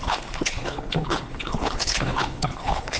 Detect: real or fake fake